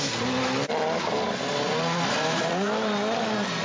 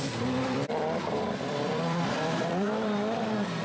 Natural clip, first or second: first